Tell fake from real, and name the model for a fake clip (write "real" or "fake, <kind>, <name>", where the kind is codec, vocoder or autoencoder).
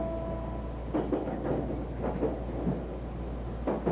real